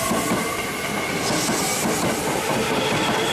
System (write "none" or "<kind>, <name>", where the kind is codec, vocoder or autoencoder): none